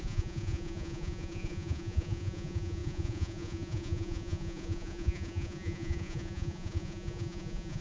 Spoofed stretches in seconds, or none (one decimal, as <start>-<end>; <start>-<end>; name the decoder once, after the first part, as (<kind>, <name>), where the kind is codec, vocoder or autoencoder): 0.0-7.8 (vocoder, Vocos)